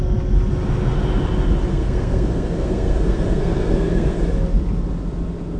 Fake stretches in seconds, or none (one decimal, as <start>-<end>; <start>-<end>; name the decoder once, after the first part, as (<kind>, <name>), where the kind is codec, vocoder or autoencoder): 1.7-4.2 (codec, SNAC)